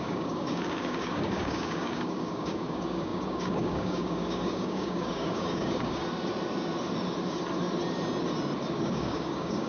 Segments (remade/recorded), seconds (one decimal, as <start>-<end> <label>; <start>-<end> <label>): 0.0-6.0 remade; 6.0-8.8 recorded; 8.8-9.7 remade